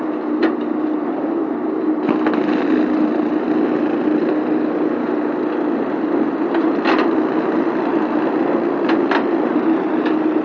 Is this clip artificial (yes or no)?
no